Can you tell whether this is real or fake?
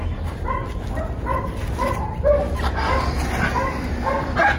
real